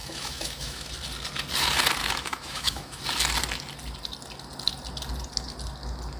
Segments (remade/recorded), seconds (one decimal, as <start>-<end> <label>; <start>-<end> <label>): 0.0-0.9 remade; 0.9-2.0 recorded; 2.0-3.0 remade; 3.0-6.2 recorded